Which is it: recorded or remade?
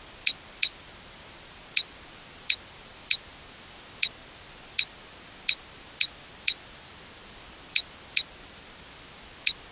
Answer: recorded